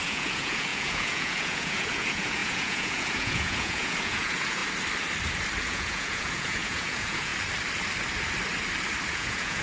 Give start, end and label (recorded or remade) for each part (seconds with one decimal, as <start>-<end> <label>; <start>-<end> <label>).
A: 0.0-4.6 remade; 4.6-5.6 recorded; 5.6-7.3 remade; 7.3-9.1 recorded; 9.1-9.6 remade